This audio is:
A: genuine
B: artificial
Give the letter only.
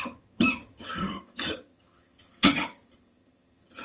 B